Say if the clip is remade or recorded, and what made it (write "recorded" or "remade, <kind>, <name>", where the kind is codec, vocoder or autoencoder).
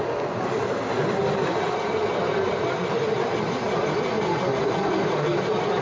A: recorded